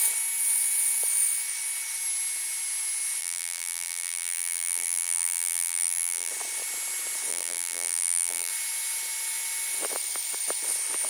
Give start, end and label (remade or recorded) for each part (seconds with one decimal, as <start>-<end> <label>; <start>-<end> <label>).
0.0-3.2 recorded; 3.2-6.3 remade; 6.3-7.3 recorded; 7.3-8.5 remade; 8.5-11.1 recorded